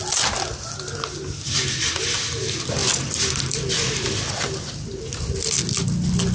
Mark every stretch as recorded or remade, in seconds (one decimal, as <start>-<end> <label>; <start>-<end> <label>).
0.0-6.3 recorded